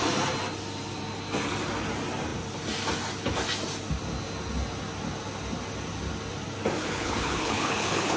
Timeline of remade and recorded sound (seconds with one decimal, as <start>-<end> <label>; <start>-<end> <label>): 0.0-6.8 recorded; 6.8-8.2 remade